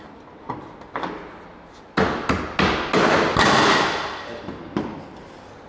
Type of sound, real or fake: real